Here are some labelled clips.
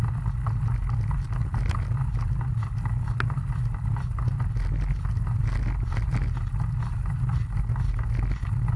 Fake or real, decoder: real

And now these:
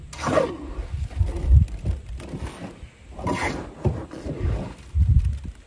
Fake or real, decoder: real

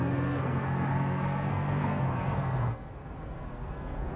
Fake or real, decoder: fake, codec, SNAC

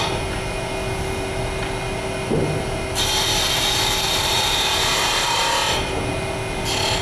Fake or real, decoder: real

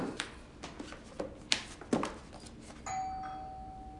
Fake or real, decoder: real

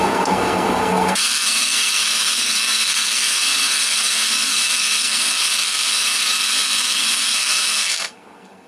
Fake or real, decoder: fake, codec, SNAC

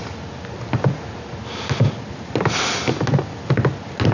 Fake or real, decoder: real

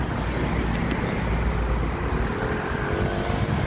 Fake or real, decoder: real